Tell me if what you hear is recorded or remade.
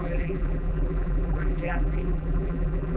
remade